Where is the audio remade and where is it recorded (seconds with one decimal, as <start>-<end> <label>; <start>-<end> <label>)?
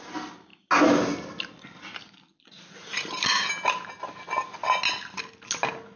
0.0-6.0 recorded